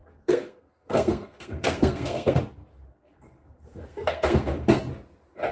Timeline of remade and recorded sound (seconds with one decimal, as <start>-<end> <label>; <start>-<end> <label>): 0.0-2.4 remade; 2.4-2.9 recorded; 2.9-4.8 remade; 4.8-5.5 recorded